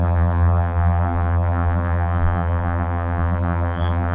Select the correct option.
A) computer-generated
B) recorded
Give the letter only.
A